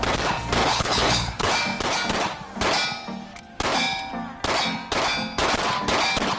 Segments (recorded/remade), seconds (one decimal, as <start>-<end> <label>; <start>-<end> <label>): 0.0-0.6 recorded; 0.6-1.5 remade; 1.5-6.4 recorded